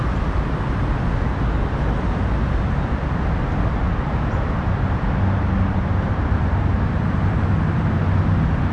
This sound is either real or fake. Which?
real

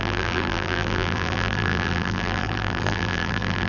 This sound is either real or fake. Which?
fake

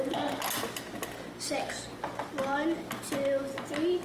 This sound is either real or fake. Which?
real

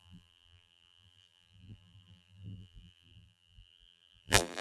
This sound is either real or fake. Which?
fake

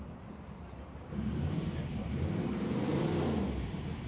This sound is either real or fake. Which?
fake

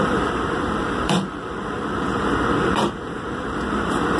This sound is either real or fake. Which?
fake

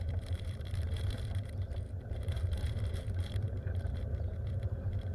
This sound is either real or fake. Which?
fake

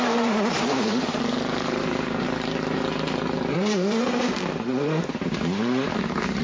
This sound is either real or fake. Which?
fake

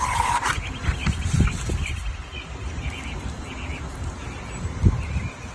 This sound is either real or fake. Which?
real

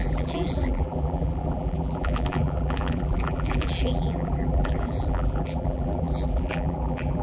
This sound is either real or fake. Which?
fake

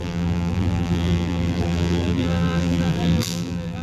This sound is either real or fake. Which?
fake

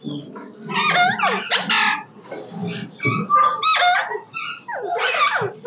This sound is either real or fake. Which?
real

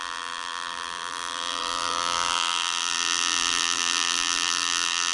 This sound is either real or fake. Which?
fake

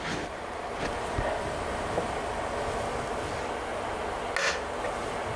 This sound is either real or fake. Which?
real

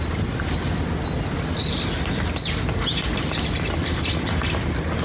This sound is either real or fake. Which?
real